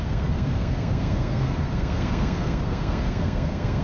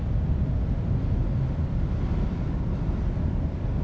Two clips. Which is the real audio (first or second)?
second